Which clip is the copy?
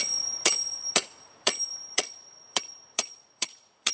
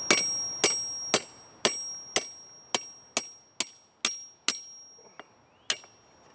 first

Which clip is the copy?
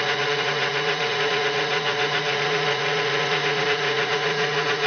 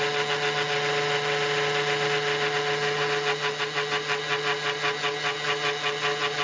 first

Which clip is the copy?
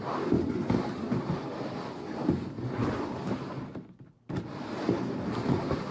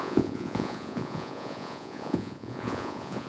second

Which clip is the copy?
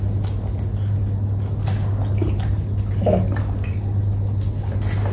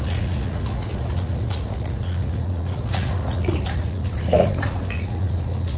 second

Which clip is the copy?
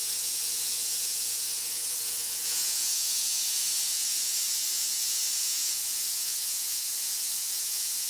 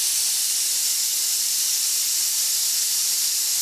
first